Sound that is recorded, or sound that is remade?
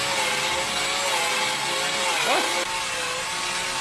recorded